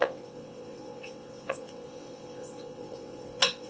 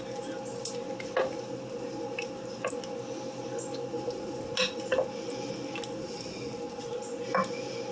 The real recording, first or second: second